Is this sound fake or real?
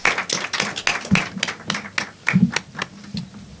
real